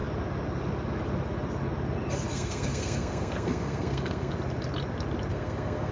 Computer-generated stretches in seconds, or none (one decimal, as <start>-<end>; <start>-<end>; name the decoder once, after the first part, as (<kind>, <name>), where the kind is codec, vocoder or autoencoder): 2.3-4.3 (codec, SNAC); 5.3-5.9